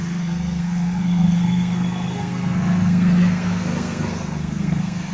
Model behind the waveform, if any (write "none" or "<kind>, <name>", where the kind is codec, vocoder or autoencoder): codec, SNAC